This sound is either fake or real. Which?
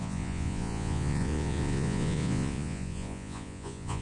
fake